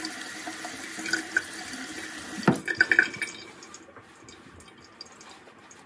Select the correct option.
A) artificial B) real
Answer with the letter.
B